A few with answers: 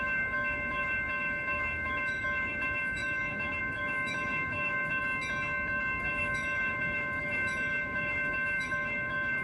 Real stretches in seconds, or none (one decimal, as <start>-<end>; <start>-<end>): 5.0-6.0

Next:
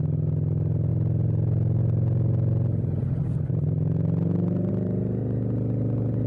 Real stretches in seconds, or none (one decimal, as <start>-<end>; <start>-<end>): 0.0-6.3

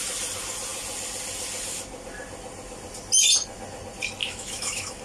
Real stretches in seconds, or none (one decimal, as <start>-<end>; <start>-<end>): 0.0-4.2

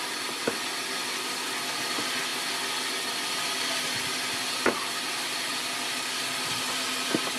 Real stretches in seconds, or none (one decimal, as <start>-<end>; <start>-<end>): 0.0-7.4